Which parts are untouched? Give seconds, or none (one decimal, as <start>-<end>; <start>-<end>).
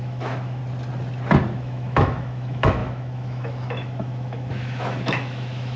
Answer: 0.6-1.5